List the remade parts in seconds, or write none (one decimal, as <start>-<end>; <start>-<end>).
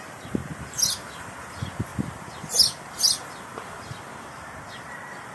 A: none